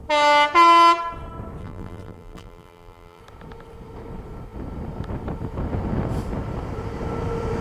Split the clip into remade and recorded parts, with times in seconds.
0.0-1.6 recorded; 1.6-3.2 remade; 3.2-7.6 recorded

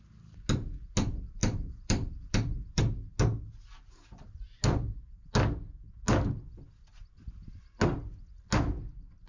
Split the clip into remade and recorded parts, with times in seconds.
0.0-1.4 recorded; 1.4-2.8 remade; 2.8-9.3 recorded